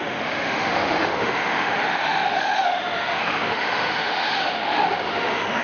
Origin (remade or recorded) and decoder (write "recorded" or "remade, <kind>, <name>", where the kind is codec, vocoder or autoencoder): remade, autoencoder, DAC-VAE